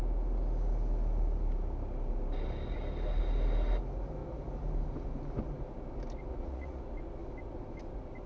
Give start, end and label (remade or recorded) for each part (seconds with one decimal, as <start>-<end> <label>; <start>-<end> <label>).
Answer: 0.0-6.3 recorded; 6.3-6.8 remade; 6.8-8.3 recorded